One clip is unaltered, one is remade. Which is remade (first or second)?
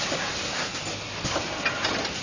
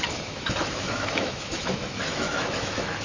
second